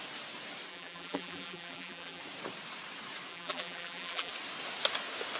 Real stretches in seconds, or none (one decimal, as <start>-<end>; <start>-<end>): 0.0-0.7; 2.2-3.3; 4.3-5.4